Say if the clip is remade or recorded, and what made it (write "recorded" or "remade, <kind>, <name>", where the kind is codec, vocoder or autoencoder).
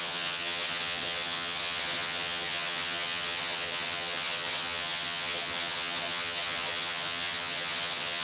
remade, vocoder, HiFi-GAN